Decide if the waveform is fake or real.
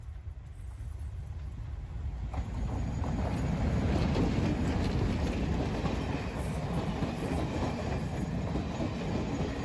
real